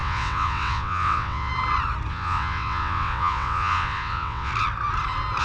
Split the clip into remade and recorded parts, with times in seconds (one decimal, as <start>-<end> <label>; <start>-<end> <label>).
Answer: 0.0-1.5 remade; 1.5-2.1 recorded; 2.1-4.5 remade; 4.5-5.4 recorded